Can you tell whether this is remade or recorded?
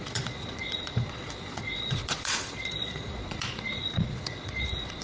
remade